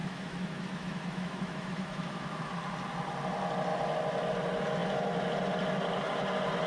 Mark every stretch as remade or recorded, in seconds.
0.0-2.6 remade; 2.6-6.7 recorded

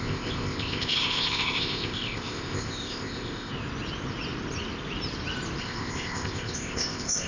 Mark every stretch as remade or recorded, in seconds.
0.0-3.5 remade; 3.5-5.6 recorded; 5.6-7.3 remade